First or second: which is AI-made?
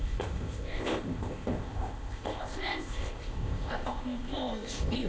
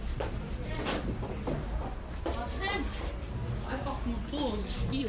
first